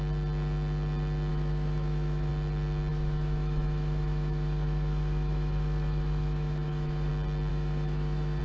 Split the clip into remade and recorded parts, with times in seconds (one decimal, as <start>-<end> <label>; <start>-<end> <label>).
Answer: 0.0-1.3 recorded; 1.3-2.3 remade; 2.3-2.9 recorded; 2.9-7.1 remade; 7.1-7.5 recorded; 7.5-8.4 remade